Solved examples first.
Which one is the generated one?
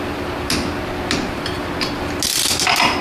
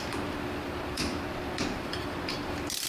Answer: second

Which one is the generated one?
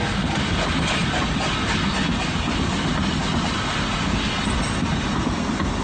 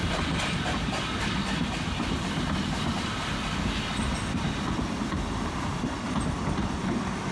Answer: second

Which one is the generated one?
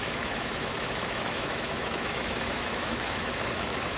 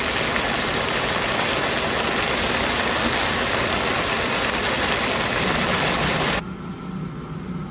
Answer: first